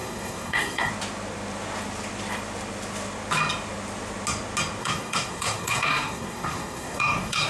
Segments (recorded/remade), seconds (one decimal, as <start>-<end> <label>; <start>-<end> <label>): 0.0-0.9 remade; 0.9-4.8 recorded; 4.8-7.5 remade